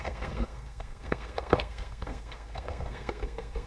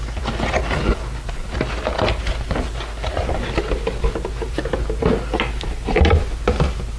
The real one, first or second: second